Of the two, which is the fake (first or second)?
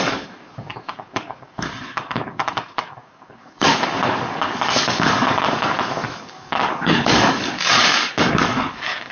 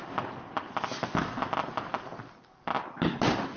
first